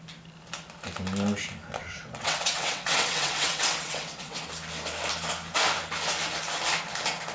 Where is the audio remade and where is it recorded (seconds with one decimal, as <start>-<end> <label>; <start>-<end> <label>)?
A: 0.0-1.8 recorded; 1.8-4.4 remade; 4.4-7.3 recorded